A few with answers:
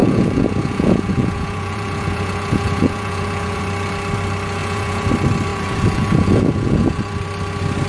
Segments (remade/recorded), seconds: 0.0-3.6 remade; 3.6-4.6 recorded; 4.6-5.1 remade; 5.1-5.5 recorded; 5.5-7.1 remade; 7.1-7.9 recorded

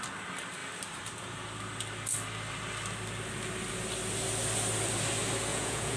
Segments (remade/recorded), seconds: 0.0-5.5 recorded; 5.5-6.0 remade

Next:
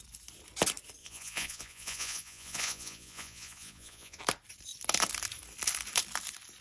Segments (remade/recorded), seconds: 0.0-1.0 recorded; 1.0-4.2 remade; 4.2-6.6 recorded

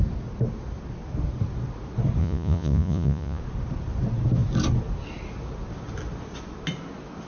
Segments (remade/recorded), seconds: 0.0-2.2 recorded; 2.2-3.4 remade; 3.4-7.3 recorded

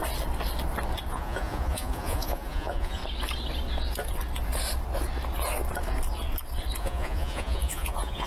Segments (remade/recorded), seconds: 0.0-1.1 recorded; 1.1-3.0 remade; 3.0-6.8 recorded; 6.8-8.3 remade